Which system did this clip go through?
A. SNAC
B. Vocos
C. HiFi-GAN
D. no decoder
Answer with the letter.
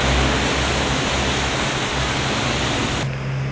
D